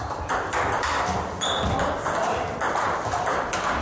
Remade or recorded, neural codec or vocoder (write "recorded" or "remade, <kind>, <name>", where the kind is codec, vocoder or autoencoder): recorded